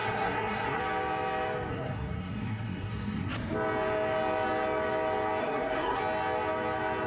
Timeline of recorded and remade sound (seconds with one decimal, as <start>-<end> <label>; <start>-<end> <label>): 0.0-0.8 remade; 0.8-1.7 recorded; 1.7-3.3 remade; 3.3-5.4 recorded; 5.4-6.0 remade; 6.0-7.1 recorded